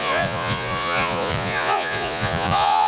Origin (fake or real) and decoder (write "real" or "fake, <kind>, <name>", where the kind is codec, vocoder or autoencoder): fake, vocoder, Vocos